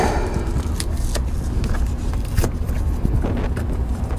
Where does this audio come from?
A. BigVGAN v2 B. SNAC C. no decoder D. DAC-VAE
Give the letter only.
C